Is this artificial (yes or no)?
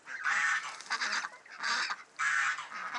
no